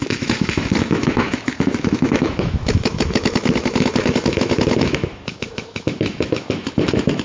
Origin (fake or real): fake